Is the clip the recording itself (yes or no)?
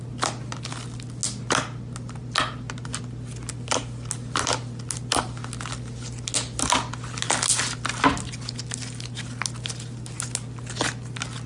yes